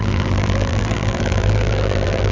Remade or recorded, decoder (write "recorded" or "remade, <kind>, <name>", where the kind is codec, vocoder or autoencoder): remade, vocoder, BigVGAN v2